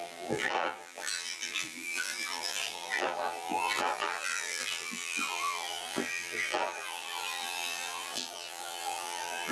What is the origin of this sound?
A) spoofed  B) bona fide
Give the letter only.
A